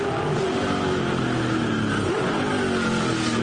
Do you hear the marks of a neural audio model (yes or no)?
no